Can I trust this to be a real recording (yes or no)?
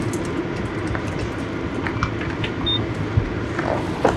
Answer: yes